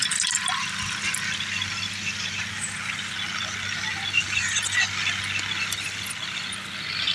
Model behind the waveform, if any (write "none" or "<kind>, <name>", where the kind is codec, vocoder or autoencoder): none